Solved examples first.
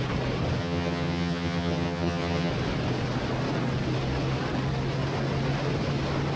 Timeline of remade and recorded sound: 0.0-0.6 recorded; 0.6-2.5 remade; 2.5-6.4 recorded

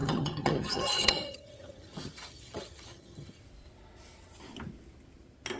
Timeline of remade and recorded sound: 0.0-3.4 remade; 3.4-5.6 recorded

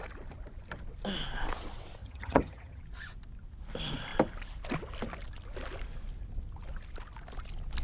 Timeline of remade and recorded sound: 0.0-2.0 recorded; 2.0-2.8 remade; 2.8-7.8 recorded

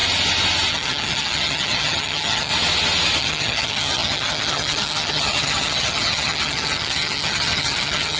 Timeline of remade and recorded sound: 0.0-0.7 recorded; 0.7-2.5 remade; 2.5-3.2 recorded; 3.2-8.2 remade

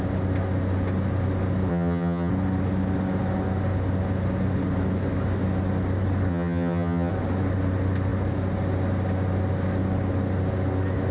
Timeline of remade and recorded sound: 0.0-1.7 recorded; 1.7-2.3 remade; 2.3-6.3 recorded; 6.3-7.1 remade; 7.1-11.1 recorded

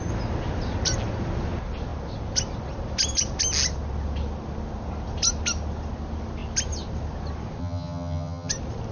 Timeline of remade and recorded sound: 0.0-7.6 recorded; 7.6-8.5 remade; 8.5-8.9 recorded